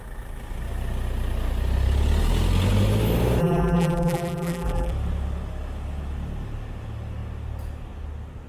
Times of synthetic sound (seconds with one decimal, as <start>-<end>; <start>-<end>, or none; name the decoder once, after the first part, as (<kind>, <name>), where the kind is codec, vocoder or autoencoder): 3.4-4.9 (vocoder, BigVGAN v2)

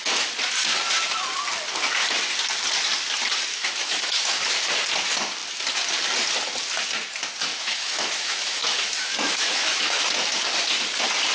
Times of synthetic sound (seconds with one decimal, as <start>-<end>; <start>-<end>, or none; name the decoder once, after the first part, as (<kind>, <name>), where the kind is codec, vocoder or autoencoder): 3.5-4.5 (autoencoder, DAC-VAE); 7.5-10.0

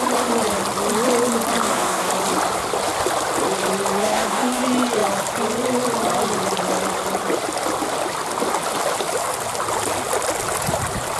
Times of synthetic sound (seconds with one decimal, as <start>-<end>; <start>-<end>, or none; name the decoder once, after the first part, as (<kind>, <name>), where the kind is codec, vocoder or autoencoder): 1.6-2.1 (codec, DAC); 4.0-4.6

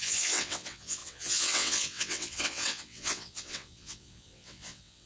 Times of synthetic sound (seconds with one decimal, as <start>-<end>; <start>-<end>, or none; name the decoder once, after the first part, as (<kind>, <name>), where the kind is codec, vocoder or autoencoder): 0.0-5.1 (vocoder, WaveNeXt)

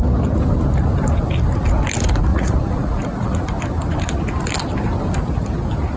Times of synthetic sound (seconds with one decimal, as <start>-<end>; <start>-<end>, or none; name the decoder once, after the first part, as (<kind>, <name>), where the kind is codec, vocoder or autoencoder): 2.3-3.4 (vocoder, Vocos)

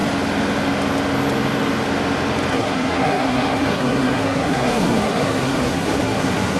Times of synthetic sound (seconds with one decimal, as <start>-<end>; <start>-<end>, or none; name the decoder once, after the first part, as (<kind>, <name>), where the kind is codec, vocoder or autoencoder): 2.5-6.6 (codec, SNAC)